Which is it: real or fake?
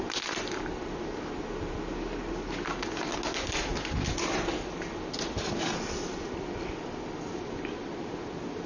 real